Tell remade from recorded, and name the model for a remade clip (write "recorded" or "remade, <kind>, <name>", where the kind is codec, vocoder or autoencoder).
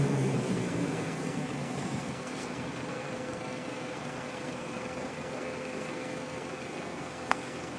remade, codec, SNAC